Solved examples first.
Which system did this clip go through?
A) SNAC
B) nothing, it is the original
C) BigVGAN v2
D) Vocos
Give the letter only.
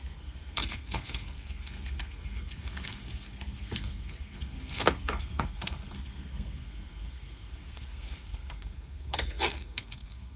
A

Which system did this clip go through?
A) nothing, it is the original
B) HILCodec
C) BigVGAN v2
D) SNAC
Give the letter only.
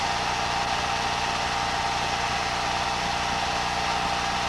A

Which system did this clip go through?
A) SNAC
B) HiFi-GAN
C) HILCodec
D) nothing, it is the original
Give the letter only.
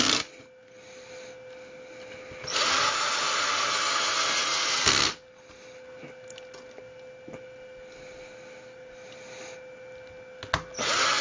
D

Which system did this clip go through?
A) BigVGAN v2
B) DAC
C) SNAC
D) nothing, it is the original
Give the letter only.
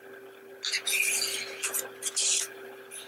D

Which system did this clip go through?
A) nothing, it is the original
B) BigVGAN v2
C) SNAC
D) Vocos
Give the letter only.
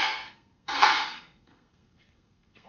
C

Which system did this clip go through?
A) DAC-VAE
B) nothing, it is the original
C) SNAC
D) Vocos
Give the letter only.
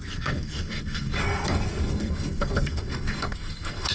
C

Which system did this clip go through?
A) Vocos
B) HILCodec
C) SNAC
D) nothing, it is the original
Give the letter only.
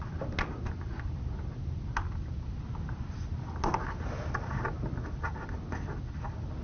D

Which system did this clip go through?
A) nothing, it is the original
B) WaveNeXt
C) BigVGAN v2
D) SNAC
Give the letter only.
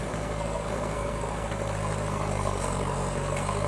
D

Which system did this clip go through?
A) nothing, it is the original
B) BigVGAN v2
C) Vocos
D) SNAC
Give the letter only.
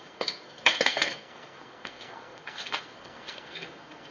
D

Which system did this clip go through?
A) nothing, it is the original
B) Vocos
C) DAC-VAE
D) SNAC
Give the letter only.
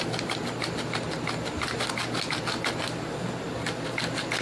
A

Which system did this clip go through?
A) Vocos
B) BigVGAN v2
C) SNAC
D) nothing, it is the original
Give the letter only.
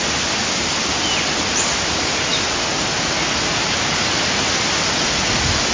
D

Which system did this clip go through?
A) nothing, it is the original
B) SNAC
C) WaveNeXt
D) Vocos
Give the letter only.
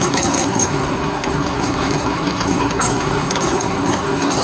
B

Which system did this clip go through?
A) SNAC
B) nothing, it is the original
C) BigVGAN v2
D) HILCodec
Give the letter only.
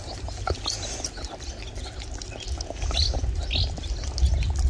B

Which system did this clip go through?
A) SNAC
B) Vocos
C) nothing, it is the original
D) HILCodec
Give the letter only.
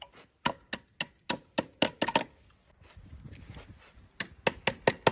C